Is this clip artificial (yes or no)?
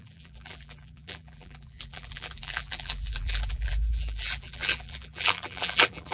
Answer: yes